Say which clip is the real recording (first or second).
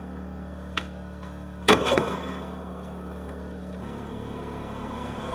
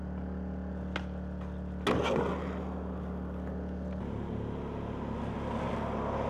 second